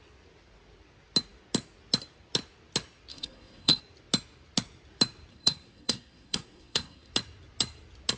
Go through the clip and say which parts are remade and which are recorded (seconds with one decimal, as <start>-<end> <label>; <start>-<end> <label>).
0.0-3.1 recorded; 3.1-3.8 remade; 3.8-5.3 recorded; 5.3-7.1 remade; 7.1-8.2 recorded

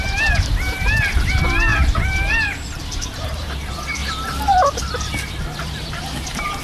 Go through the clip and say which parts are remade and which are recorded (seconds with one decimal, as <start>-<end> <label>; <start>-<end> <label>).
0.0-4.0 remade; 4.0-4.5 recorded; 4.5-6.6 remade

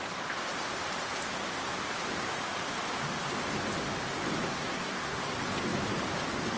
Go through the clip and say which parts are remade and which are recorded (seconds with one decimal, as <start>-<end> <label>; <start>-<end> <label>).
0.0-4.5 recorded; 4.5-5.2 remade; 5.2-6.6 recorded

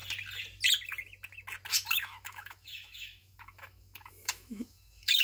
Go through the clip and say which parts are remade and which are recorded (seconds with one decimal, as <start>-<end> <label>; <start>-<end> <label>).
0.0-1.7 recorded; 1.7-5.2 remade

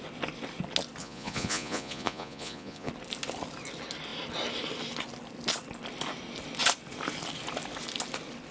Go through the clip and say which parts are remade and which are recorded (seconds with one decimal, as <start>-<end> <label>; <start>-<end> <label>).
0.0-1.0 recorded; 1.0-2.9 remade; 2.9-8.5 recorded

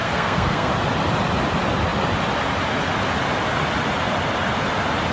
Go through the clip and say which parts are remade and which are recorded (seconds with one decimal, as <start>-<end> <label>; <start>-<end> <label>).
0.0-0.7 remade; 0.7-5.1 recorded

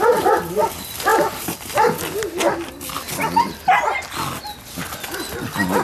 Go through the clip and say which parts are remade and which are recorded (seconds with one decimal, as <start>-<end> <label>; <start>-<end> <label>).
0.0-5.8 recorded